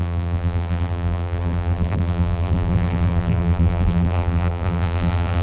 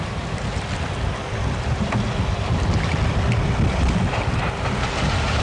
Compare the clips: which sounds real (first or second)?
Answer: second